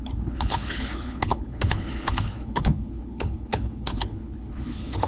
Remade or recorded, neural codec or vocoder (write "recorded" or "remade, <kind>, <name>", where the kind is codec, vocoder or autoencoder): remade, codec, HILCodec